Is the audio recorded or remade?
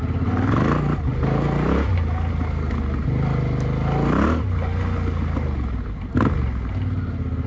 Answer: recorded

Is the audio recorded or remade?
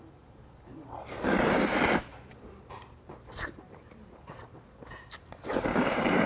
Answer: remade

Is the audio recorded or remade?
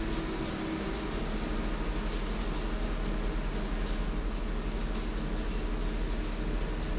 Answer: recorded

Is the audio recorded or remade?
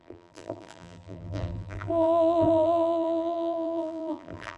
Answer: remade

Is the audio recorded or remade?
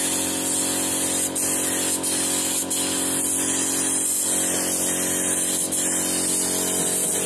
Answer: recorded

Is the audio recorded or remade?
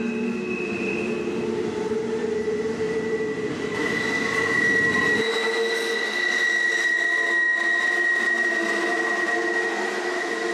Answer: recorded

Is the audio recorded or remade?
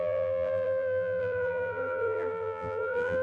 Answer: remade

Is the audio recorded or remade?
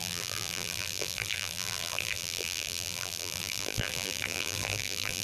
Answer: remade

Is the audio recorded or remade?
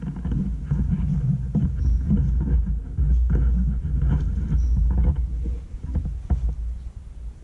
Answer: recorded